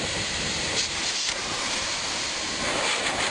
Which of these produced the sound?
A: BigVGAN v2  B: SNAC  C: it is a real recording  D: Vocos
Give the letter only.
A